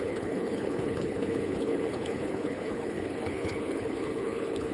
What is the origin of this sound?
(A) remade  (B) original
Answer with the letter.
A